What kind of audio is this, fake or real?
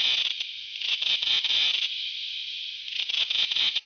fake